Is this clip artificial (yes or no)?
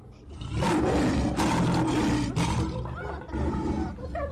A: no